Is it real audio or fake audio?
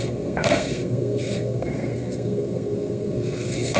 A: fake